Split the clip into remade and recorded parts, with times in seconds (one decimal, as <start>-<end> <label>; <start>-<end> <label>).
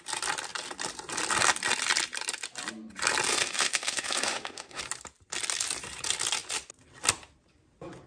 0.0-3.3 recorded; 3.3-4.8 remade; 4.8-8.1 recorded